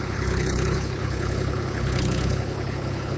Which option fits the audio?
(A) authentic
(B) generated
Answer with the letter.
B